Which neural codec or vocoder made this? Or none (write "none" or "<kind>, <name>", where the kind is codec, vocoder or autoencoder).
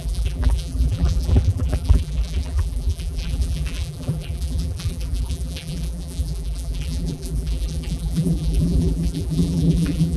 vocoder, BigVGAN v2